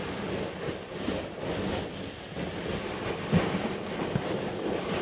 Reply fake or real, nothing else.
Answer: real